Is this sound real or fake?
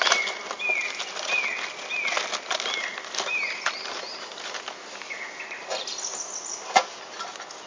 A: real